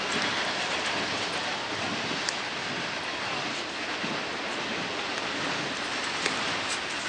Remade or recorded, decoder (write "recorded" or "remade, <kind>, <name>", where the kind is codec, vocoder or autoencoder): recorded